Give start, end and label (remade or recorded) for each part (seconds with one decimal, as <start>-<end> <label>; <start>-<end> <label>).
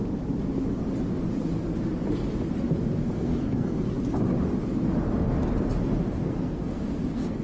0.0-3.0 recorded; 3.0-3.8 remade; 3.8-6.2 recorded; 6.2-7.4 remade